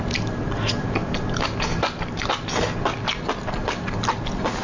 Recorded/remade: recorded